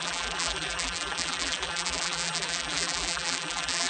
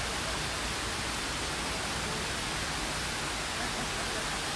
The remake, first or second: first